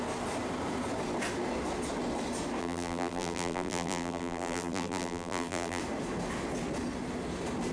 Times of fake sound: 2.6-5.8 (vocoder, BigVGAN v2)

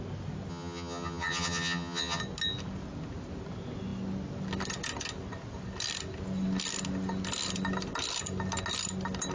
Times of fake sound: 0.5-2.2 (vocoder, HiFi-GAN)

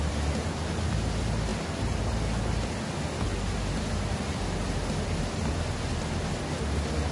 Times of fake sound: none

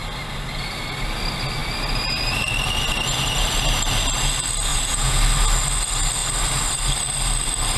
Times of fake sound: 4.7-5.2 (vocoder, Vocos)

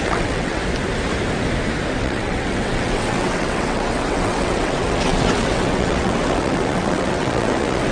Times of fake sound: 0.0-0.6 (vocoder, WaveNeXt); 2.0-7.9